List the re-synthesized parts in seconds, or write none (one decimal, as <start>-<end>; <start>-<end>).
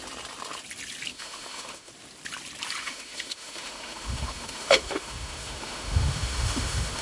1.1-1.9; 2.8-7.0